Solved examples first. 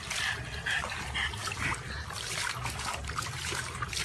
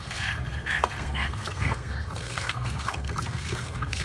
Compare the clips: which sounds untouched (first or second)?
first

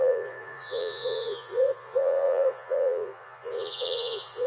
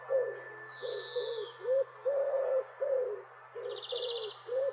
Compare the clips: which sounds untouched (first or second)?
second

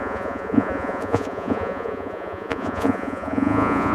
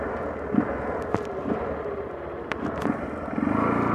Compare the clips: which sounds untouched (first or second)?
second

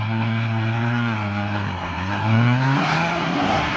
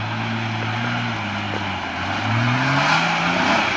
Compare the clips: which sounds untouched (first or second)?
second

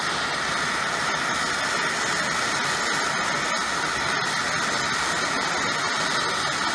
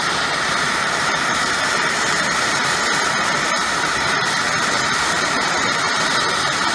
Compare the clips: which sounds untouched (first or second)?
first